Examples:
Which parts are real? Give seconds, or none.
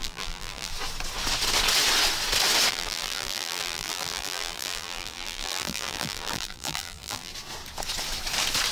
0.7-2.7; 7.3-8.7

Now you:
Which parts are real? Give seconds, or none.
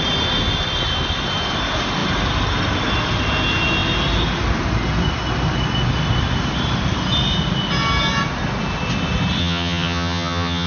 0.0-9.4